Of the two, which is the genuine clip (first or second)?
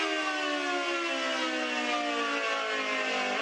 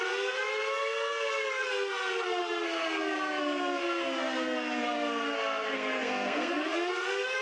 first